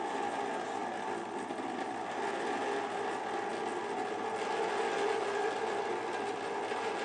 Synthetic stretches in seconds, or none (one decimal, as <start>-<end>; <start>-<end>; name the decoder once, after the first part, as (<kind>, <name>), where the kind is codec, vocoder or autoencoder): none